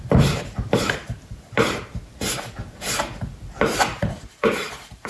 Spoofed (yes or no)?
yes